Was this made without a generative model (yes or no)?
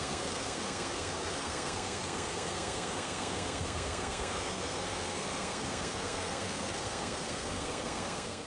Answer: no